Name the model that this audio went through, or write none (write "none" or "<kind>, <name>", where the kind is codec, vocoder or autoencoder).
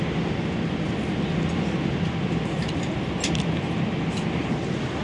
none